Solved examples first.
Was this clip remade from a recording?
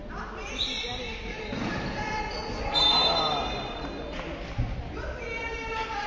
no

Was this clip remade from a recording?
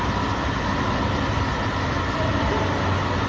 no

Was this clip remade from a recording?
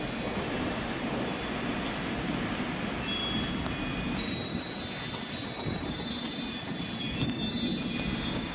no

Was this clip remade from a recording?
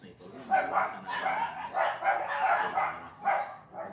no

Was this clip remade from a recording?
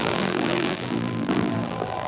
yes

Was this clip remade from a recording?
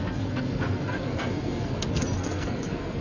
yes